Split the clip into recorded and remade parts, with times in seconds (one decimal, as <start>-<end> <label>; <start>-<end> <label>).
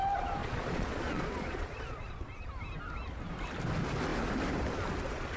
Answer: 0.0-0.4 recorded; 0.4-2.5 remade; 2.5-5.4 recorded